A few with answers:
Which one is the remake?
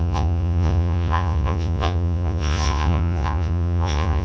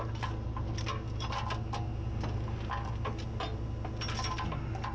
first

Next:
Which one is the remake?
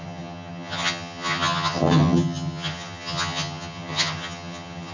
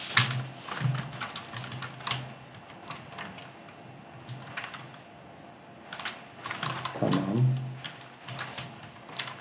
first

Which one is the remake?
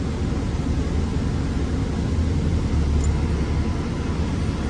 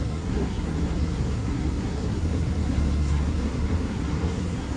second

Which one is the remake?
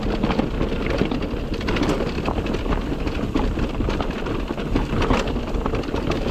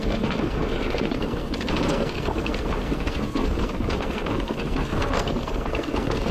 second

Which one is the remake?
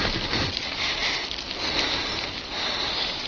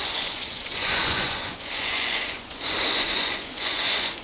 second